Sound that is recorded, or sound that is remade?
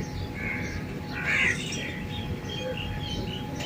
recorded